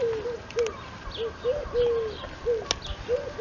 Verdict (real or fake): real